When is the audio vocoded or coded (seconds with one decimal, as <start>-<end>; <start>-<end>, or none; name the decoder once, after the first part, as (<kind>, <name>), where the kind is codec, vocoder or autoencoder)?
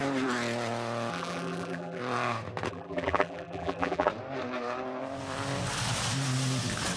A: 1.1-2.0 (vocoder, BigVGAN v2); 2.7-4.1